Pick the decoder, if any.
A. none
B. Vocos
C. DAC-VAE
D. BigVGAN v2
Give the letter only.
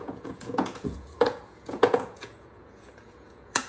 B